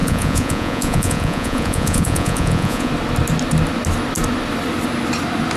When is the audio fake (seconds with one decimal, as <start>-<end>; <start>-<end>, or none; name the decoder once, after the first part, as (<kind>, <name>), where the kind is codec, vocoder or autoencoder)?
0.0-2.9 (vocoder, Vocos)